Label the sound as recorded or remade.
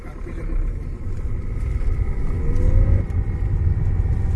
recorded